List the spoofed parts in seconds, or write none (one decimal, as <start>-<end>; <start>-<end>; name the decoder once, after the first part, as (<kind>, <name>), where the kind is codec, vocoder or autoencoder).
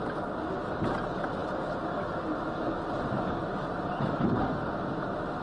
none